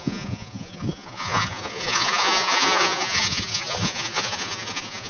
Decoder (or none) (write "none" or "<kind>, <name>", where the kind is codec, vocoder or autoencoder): vocoder, Vocos